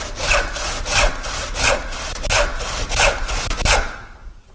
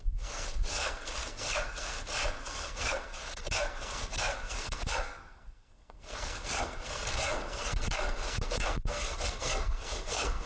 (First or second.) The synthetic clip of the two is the second